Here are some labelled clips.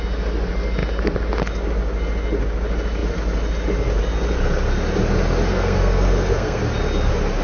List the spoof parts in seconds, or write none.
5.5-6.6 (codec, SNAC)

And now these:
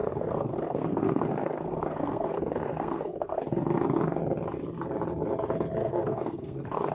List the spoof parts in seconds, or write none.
0.0-3.4 (codec, SNAC); 5.8-6.9

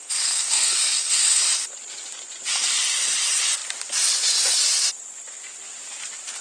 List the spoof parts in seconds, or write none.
0.0-1.4 (codec, SNAC)

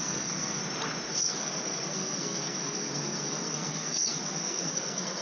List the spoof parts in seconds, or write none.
0.0-0.6 (codec, SNAC); 1.1-5.2

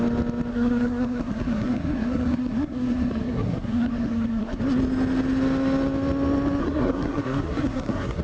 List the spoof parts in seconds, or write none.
0.5-4.6 (codec, SNAC); 6.6-8.2

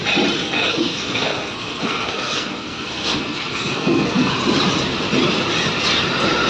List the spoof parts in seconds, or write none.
0.4-4.3 (codec, SNAC)